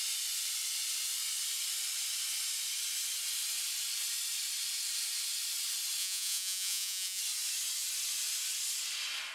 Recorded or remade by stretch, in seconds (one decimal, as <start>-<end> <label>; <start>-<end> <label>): 0.0-6.0 recorded; 6.0-7.2 remade; 7.2-9.3 recorded